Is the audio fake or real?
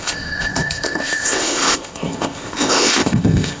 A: fake